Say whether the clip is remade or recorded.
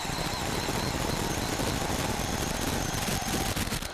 recorded